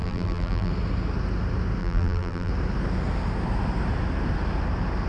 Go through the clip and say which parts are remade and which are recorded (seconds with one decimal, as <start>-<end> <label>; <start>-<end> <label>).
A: 0.0-0.7 remade; 0.7-1.8 recorded; 1.8-2.5 remade; 2.5-5.1 recorded